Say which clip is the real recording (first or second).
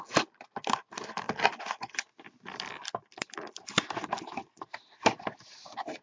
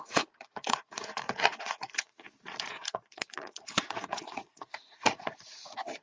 first